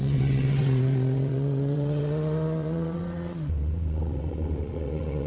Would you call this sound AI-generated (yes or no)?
yes